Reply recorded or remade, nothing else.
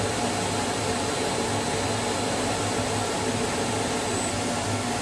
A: recorded